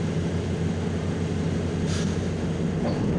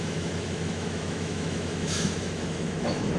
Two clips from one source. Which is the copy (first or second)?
second